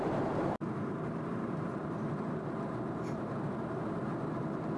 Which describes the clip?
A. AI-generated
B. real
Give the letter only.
A